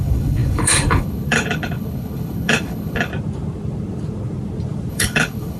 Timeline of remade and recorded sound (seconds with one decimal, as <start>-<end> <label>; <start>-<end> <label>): 0.0-3.1 remade; 3.1-4.9 recorded; 4.9-5.6 remade